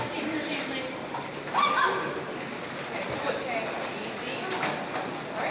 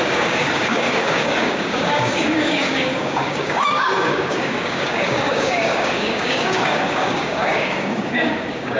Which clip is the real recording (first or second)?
first